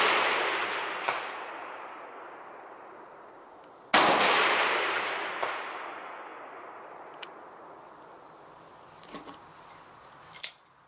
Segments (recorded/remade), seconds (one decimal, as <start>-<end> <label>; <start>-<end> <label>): 0.0-0.6 recorded; 0.6-3.5 remade; 3.5-10.9 recorded